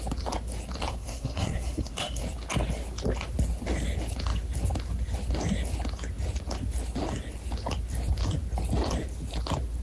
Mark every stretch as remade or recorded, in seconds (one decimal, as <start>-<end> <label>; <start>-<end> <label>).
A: 0.0-0.9 recorded; 0.9-2.2 remade; 2.2-9.8 recorded